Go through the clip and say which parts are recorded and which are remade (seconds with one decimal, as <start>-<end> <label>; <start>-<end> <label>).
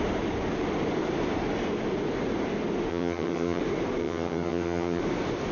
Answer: 0.0-2.9 recorded; 2.9-3.6 remade; 3.6-4.0 recorded; 4.0-5.0 remade; 5.0-5.5 recorded